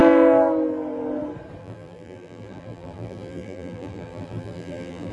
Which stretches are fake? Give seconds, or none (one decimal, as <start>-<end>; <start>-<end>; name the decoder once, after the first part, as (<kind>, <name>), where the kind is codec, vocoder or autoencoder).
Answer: 1.6-5.1 (vocoder, BigVGAN v2)